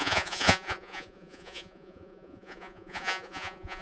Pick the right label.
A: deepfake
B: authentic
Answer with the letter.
A